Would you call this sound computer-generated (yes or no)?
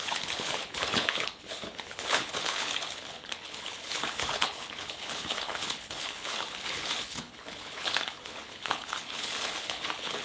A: yes